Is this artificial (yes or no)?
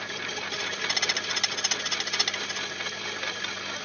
no